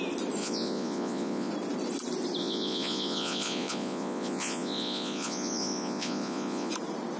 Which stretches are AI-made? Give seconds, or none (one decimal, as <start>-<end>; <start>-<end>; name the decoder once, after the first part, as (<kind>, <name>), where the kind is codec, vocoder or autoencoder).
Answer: 0.4-1.5 (vocoder, Vocos); 2.4-6.7